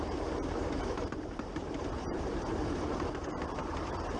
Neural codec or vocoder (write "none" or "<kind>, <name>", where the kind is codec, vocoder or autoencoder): vocoder, BigVGAN v2